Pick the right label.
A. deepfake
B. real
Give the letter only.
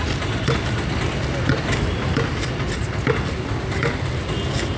B